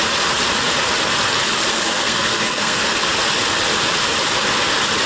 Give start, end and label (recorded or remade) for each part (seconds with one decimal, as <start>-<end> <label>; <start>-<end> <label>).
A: 0.0-1.7 recorded; 1.7-2.8 remade; 2.8-5.1 recorded